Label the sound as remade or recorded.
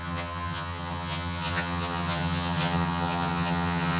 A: remade